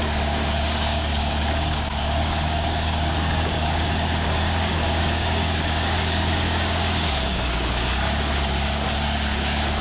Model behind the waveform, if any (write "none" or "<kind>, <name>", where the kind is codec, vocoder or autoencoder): codec, DAC